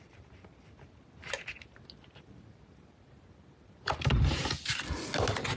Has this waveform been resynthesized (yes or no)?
no